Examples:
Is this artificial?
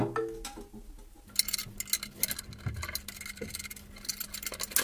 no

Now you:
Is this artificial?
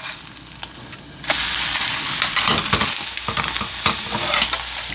no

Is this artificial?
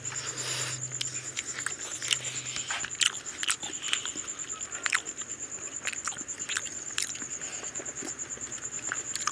no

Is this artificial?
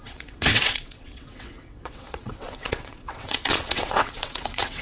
yes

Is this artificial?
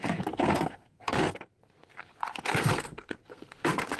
yes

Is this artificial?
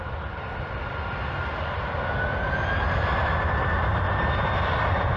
no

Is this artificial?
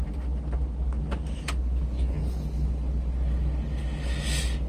no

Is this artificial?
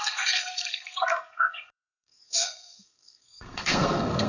yes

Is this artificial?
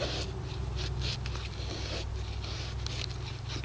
no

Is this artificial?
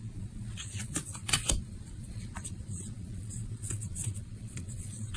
yes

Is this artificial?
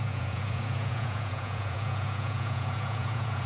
yes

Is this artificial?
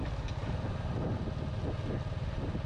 no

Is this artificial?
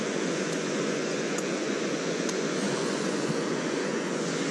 yes